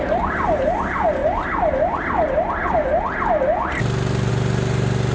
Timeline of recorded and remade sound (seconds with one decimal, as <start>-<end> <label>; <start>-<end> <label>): 0.0-5.1 recorded